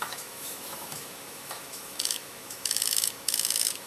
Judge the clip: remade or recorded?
remade